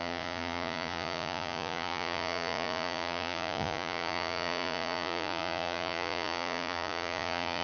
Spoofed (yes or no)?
yes